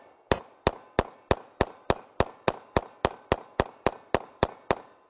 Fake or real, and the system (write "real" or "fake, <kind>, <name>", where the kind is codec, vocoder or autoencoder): real